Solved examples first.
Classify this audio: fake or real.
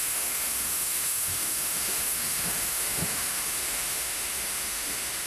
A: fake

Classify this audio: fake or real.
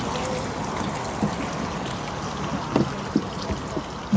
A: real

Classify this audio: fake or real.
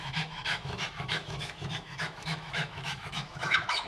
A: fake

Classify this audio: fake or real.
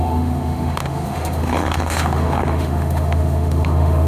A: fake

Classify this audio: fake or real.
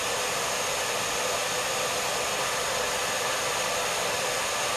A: real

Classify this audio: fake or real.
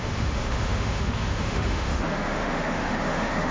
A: fake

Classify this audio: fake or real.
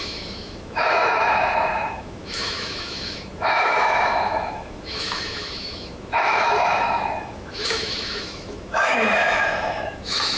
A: fake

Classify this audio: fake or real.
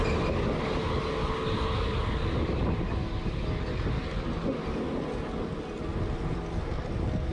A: real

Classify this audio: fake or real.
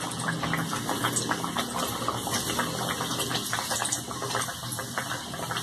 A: real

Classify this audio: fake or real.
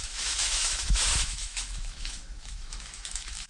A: fake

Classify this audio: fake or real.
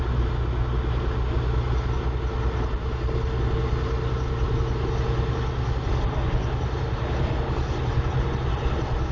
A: real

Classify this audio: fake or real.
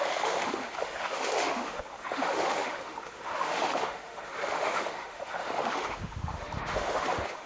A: fake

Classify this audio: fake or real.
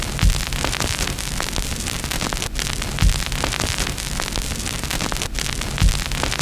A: real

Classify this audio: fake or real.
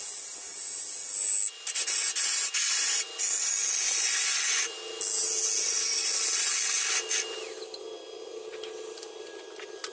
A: real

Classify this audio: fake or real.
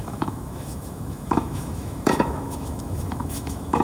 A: fake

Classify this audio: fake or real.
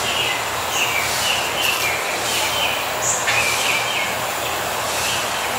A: real